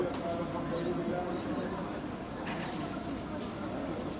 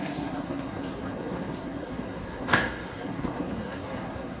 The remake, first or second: second